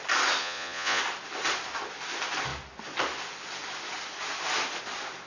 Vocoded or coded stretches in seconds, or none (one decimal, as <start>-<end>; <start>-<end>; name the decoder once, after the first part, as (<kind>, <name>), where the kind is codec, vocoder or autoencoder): 0.4-1.0 (vocoder, Vocos)